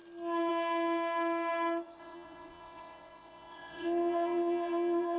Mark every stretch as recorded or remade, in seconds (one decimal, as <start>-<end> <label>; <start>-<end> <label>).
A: 0.0-2.0 recorded; 2.0-5.2 remade